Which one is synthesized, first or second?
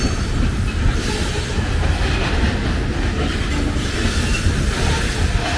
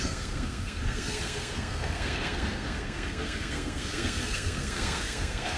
second